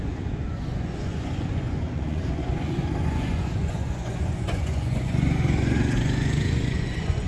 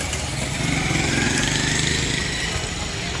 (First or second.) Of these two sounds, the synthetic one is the first